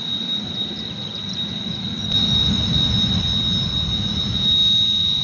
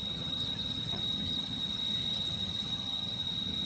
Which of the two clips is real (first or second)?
first